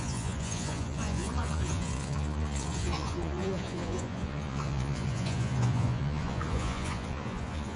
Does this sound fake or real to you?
fake